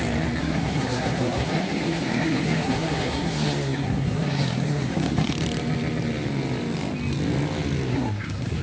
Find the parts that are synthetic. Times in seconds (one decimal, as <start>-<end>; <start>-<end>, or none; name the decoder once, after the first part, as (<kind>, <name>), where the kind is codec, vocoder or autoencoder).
0.4-5.3 (codec, SNAC); 7.9-8.6